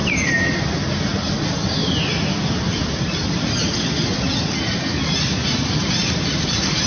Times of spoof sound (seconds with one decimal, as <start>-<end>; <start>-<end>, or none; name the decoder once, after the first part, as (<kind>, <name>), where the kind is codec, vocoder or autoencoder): 5.4-6.9 (vocoder, BigVGAN v2)